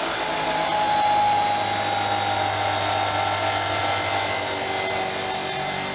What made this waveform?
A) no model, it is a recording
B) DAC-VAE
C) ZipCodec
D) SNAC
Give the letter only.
A